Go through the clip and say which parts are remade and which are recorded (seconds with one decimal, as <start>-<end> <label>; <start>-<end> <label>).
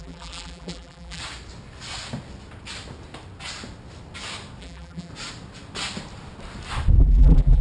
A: 0.0-1.2 remade; 1.2-4.6 recorded; 4.6-5.1 remade; 5.1-7.0 recorded; 7.0-7.6 remade